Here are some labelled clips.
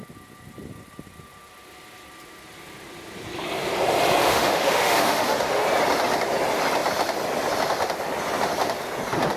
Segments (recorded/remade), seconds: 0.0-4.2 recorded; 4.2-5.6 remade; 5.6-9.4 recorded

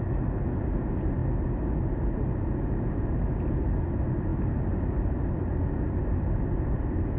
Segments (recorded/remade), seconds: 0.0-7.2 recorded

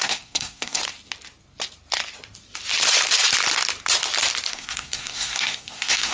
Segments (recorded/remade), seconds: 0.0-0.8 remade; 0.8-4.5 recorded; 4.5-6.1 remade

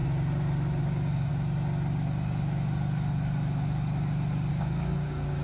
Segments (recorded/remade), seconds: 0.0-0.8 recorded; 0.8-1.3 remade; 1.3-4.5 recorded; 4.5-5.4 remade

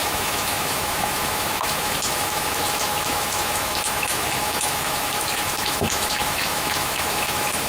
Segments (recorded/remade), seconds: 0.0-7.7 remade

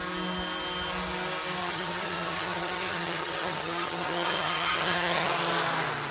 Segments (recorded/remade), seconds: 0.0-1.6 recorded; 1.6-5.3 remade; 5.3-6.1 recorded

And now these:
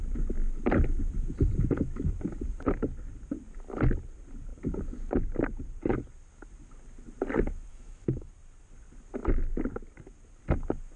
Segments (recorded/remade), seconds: 0.0-7.7 recorded; 7.7-8.3 remade; 8.3-11.0 recorded

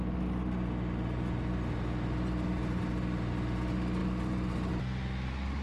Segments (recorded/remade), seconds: 0.0-5.6 recorded